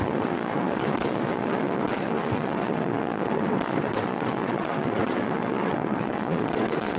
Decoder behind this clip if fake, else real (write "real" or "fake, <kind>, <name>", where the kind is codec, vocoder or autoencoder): fake, vocoder, Vocos